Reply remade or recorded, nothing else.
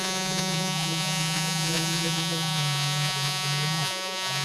remade